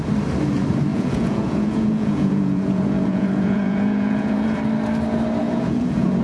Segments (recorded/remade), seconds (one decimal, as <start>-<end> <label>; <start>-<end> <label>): 0.0-0.9 recorded; 0.9-4.6 remade; 4.6-5.4 recorded; 5.4-6.2 remade